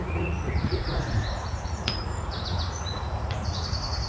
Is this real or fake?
fake